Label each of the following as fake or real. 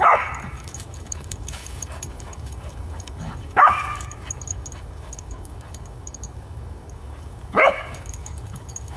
fake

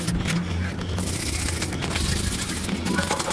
real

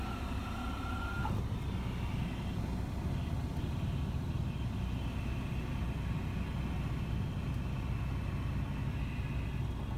real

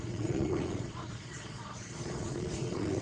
fake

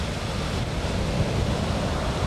real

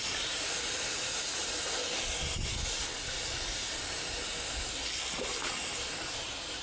real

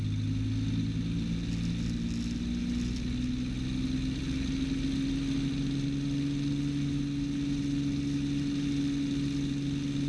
real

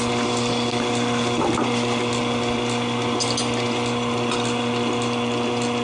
real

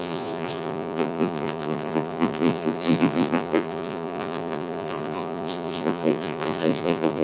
fake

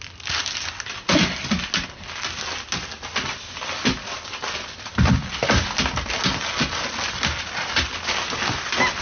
real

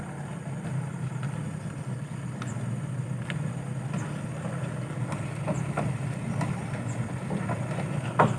real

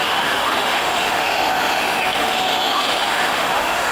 fake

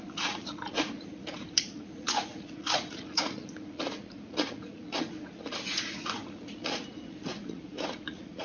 fake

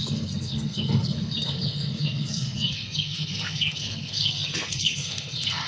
fake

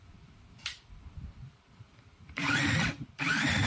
fake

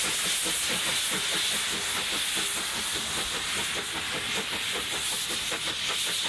real